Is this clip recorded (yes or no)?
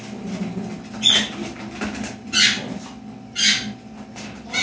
yes